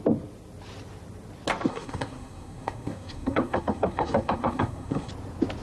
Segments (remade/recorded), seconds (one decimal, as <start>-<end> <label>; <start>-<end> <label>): 0.0-1.7 recorded; 1.7-5.1 remade; 5.1-5.6 recorded